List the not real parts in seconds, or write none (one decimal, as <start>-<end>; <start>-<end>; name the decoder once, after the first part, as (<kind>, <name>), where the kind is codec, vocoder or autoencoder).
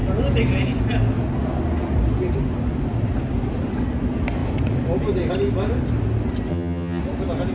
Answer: 6.5-7.0 (vocoder, HiFi-GAN)